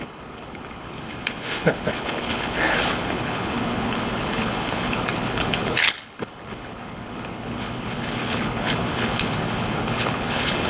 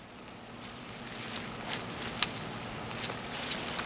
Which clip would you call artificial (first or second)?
first